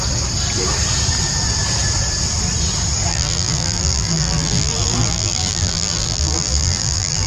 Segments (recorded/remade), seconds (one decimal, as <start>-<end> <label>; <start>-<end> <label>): 0.0-3.1 recorded; 3.1-7.3 remade